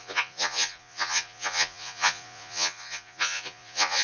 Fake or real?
fake